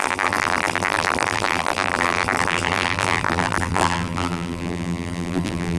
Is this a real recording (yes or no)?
no